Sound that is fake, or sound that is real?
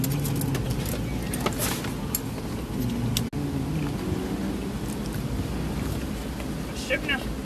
real